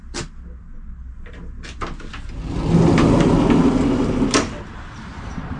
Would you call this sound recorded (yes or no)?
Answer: yes